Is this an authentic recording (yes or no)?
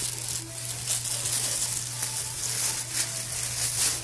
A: yes